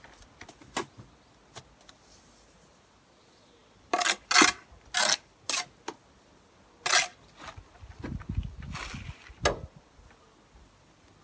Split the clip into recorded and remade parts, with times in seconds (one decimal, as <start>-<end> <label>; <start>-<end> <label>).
0.0-11.2 recorded